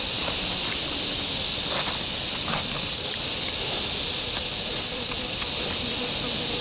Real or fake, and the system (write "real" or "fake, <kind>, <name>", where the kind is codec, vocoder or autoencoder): real